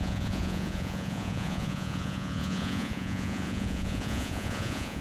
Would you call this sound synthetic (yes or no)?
yes